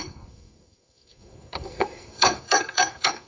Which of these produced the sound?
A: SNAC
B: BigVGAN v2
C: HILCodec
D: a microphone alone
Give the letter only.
A